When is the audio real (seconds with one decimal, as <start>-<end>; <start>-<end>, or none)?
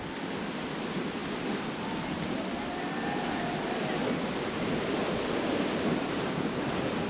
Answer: 0.0-7.1